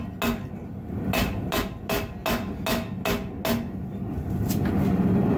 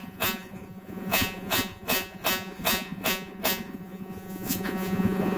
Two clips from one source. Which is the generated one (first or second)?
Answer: second